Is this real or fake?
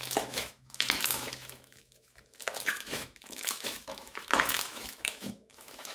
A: fake